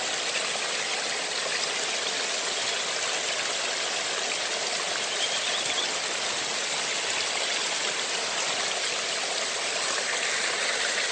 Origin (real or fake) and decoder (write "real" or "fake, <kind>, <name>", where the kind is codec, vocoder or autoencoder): real